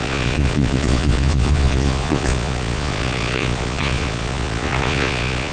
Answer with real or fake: fake